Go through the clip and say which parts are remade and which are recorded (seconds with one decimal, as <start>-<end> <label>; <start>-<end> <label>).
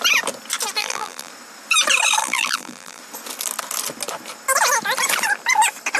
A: 0.0-0.8 recorded; 0.8-1.3 remade; 1.3-2.2 recorded; 2.2-3.0 remade; 3.0-6.0 recorded